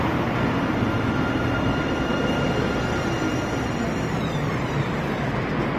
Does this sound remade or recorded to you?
recorded